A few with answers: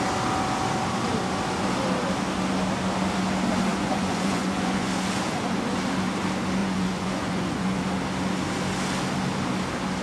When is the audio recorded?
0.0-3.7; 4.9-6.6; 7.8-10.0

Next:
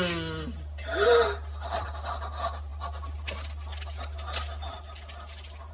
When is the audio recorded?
0.0-5.7